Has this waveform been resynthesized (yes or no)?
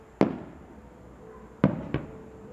no